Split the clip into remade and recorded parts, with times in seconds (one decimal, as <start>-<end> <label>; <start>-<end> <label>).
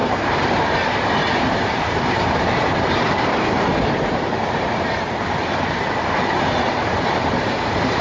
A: 0.0-5.4 remade; 5.4-6.7 recorded; 6.7-8.0 remade